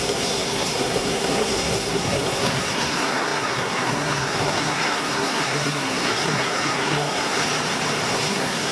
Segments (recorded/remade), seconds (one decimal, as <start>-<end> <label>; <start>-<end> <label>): 0.0-7.4 remade; 7.4-8.1 recorded; 8.1-8.7 remade

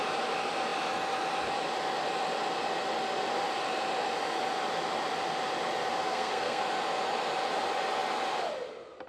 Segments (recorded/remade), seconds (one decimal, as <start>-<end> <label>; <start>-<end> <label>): 0.0-6.0 recorded; 6.0-6.6 remade; 6.6-9.1 recorded